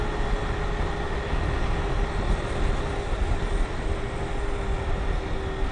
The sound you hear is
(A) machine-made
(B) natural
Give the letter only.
B